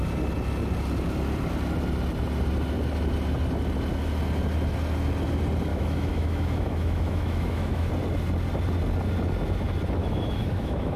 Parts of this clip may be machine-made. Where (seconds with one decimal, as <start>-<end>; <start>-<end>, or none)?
5.7-7.9; 10.0-11.0